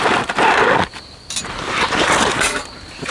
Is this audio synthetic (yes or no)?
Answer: no